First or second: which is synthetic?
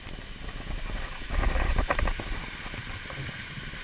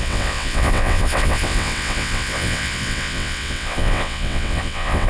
second